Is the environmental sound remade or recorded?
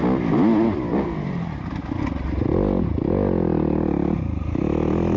recorded